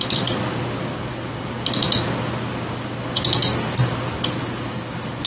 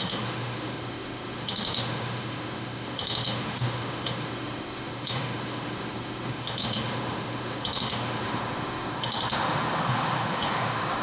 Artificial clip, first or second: second